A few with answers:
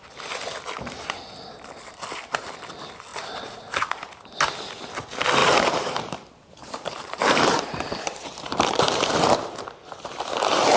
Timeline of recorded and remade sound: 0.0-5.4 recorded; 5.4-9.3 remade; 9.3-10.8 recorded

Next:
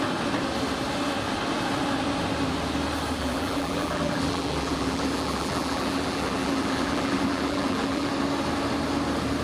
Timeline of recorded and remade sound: 0.0-3.2 recorded; 3.2-8.1 remade; 8.1-9.4 recorded

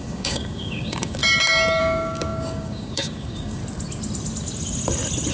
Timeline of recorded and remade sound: 0.0-1.2 remade; 1.2-1.8 recorded; 1.8-3.6 remade; 3.6-5.3 recorded